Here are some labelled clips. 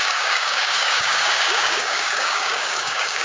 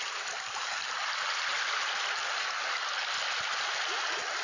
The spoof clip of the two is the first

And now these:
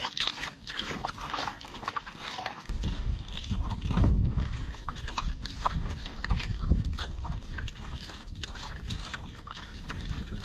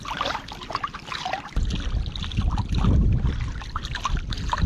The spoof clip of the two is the first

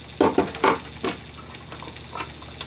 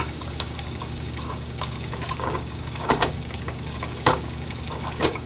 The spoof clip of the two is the second